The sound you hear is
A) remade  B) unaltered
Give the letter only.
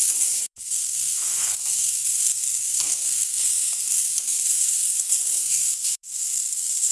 A